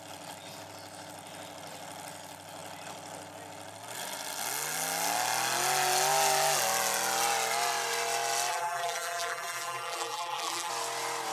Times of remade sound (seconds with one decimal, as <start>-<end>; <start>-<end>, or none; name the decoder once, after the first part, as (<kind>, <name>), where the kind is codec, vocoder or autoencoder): 8.5-10.7 (vocoder, BigVGAN v2)